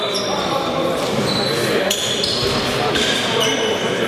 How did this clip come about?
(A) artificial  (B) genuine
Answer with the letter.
A